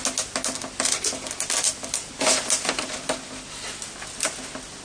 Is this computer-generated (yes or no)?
no